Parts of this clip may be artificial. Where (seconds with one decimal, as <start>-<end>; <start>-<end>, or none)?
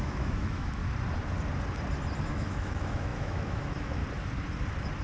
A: 0.0-0.8; 2.2-4.0